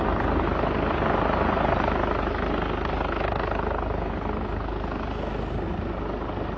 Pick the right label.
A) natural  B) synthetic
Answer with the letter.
A